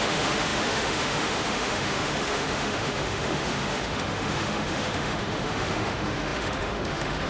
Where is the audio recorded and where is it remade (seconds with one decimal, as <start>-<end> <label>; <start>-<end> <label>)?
0.0-7.3 remade